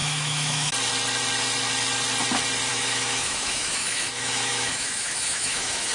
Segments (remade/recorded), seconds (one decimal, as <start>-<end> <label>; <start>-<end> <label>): 0.0-0.7 remade; 0.7-2.7 recorded; 2.7-5.9 remade